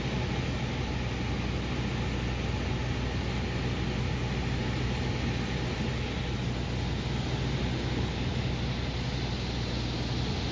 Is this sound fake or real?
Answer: real